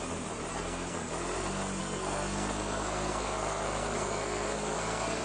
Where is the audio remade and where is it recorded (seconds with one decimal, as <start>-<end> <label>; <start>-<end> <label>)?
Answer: 0.0-0.5 recorded; 0.5-1.1 remade; 1.1-1.8 recorded; 1.8-5.2 remade